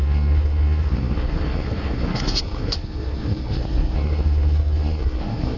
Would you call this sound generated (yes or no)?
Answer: yes